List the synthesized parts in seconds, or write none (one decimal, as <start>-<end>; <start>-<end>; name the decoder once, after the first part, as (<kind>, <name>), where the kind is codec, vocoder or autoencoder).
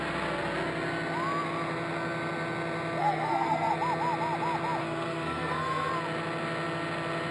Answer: 3.0-3.7 (codec, SNAC); 4.8-5.9